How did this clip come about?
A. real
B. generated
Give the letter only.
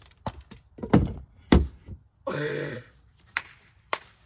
B